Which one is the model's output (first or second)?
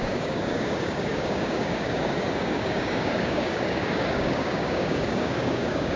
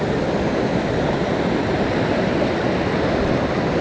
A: first